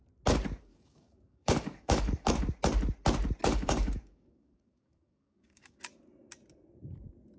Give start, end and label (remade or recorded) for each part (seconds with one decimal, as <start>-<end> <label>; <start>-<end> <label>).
0.0-0.7 recorded; 0.7-2.4 remade; 2.4-3.4 recorded; 3.4-5.8 remade; 5.8-7.4 recorded